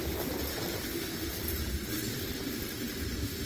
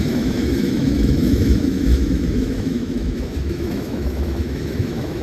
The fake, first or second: second